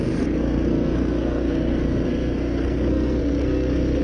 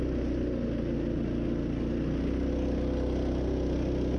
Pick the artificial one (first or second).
first